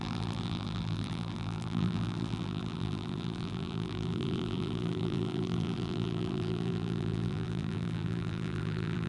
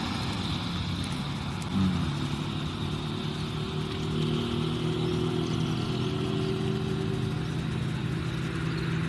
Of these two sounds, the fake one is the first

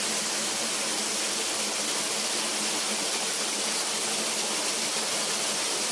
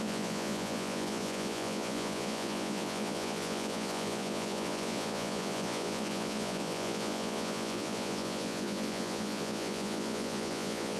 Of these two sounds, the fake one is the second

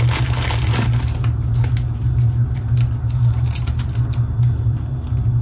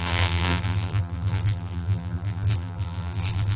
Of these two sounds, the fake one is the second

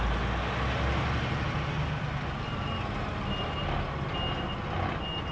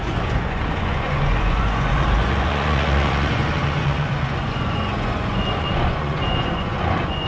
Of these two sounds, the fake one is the second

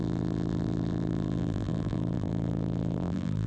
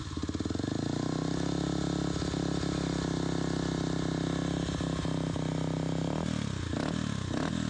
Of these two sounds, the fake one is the first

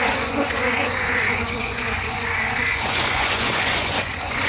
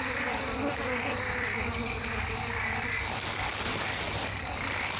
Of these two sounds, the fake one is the first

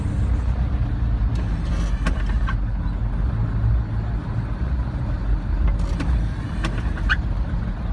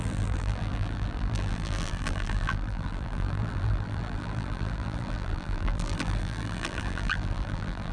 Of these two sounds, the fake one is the second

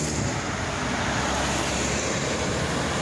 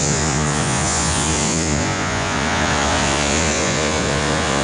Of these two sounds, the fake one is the second